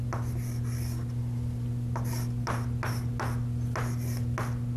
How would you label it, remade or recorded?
recorded